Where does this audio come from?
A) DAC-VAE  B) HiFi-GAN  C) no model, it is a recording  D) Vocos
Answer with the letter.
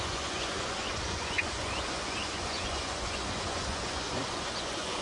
D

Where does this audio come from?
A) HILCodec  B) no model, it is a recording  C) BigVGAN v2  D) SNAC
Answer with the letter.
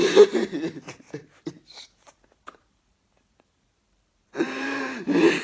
C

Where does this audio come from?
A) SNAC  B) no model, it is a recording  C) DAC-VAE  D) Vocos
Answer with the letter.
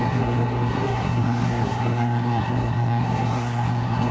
A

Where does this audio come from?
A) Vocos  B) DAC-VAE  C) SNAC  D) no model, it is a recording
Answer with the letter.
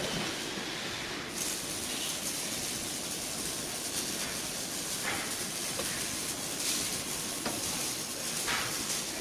D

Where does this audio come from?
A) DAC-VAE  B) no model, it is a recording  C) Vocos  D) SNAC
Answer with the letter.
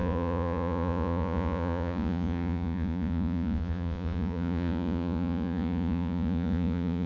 C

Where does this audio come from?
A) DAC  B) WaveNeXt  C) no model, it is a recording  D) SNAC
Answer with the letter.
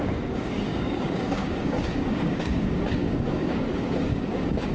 A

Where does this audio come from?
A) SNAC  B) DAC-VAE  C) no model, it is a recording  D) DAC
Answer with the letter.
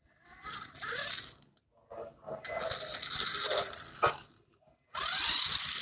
C